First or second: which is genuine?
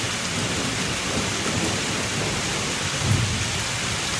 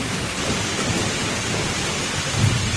first